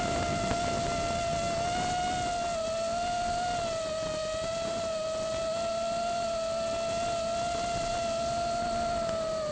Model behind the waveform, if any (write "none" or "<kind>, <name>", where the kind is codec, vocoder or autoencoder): none